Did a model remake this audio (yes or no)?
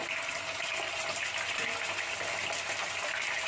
no